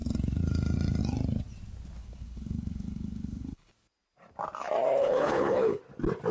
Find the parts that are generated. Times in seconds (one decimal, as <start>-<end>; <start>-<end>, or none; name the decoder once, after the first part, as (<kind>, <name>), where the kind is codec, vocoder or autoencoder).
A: 2.0-3.7 (codec, HILCodec); 5.0-5.8